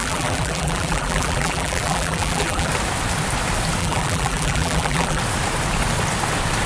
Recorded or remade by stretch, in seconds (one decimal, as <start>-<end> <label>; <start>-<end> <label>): 0.0-2.7 remade; 2.7-3.8 recorded; 3.8-5.2 remade; 5.2-6.7 recorded